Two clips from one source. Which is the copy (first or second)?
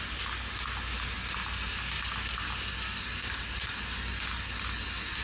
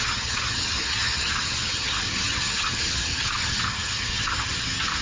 second